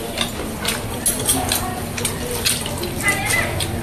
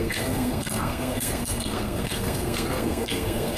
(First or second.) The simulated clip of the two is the second